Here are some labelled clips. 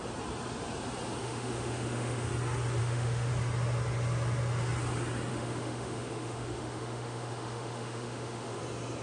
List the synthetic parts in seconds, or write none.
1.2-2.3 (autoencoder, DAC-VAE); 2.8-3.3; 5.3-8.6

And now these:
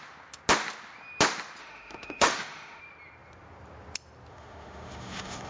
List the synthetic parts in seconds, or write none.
1.6-2.8 (autoencoder, DAC-VAE); 4.3-5.5

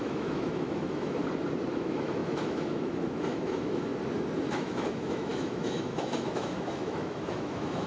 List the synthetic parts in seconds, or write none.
0.0-1.2 (autoencoder, DAC-VAE); 1.7-3.9; 4.5-7.9

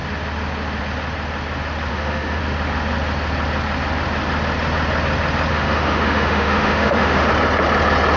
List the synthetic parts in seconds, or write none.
1.9-2.4 (autoencoder, DAC-VAE); 5.5-7.3

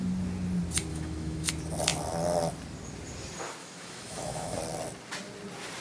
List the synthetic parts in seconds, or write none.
0.9-1.5 (autoencoder, DAC-VAE); 3.6-4.6

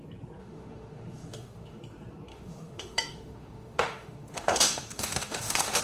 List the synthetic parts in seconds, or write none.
0.4-1.8 (autoencoder, DAC-VAE); 2.3-5.8